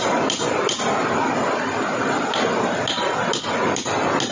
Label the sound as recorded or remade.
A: recorded